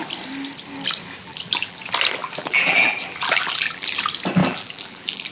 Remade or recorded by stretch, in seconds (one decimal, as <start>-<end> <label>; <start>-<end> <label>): 0.0-1.2 recorded; 1.2-1.8 remade; 1.8-2.2 recorded; 2.2-4.0 remade; 4.0-4.4 recorded; 4.4-5.3 remade